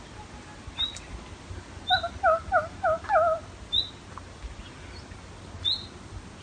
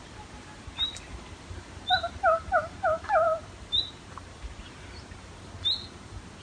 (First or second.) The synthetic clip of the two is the second